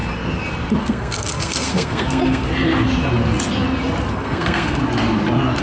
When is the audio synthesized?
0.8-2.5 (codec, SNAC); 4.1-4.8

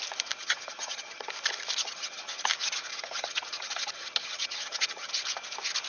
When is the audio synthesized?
0.4-1.3 (vocoder, HiFi-GAN); 1.8-2.5; 2.9-5.1

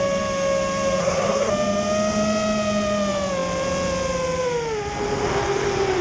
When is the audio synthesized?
1.0-1.5 (codec, SNAC)

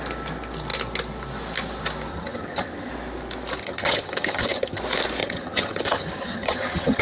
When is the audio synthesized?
2.1-2.9 (vocoder, HiFi-GAN); 3.6-4.8; 5.2-7.0

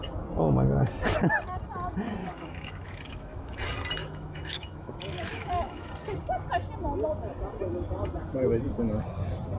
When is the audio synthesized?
2.2-3.6 (autoencoder, DAC-VAE); 4.0-5.9